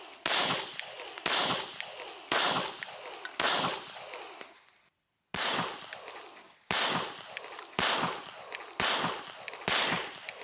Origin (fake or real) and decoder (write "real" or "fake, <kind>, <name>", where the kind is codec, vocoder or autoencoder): real